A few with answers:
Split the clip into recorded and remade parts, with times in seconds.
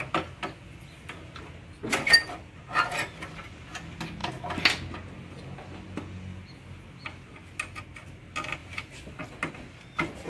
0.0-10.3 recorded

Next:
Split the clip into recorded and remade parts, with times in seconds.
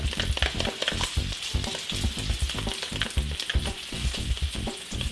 0.0-3.5 recorded; 3.5-5.1 remade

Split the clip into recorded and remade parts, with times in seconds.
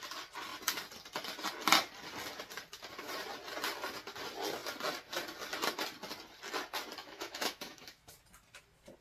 0.0-7.0 recorded; 7.0-8.1 remade; 8.1-9.0 recorded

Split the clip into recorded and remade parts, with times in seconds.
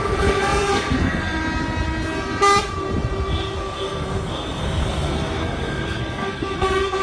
0.0-1.4 remade; 1.4-3.6 recorded; 3.6-7.0 remade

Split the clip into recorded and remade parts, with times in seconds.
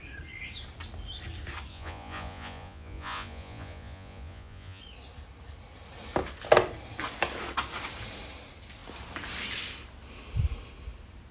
0.0-1.7 recorded; 1.7-4.8 remade; 4.8-11.3 recorded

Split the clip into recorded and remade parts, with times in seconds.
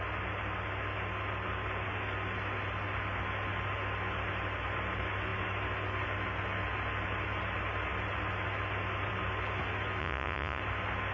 0.0-10.0 recorded; 10.0-10.6 remade; 10.6-11.1 recorded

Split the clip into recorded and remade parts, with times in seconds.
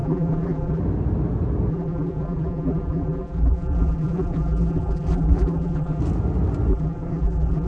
0.0-0.8 remade; 0.8-1.7 recorded; 1.7-6.0 remade; 6.0-6.7 recorded; 6.7-7.7 remade